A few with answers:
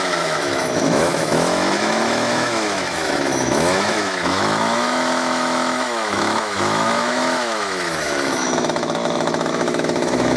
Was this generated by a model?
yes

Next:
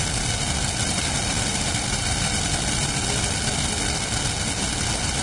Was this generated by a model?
no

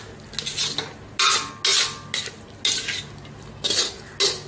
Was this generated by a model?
no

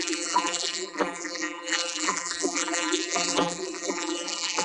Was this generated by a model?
yes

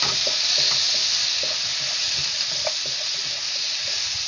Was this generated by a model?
no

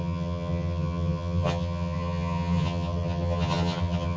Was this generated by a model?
yes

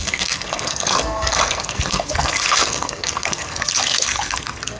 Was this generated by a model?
yes